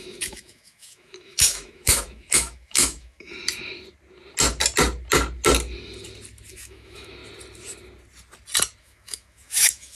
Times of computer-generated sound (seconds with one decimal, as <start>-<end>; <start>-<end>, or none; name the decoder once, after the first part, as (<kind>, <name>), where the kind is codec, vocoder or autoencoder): 0.0-3.3 (autoencoder, DAC-VAE); 6.5-7.2; 8.8-10.0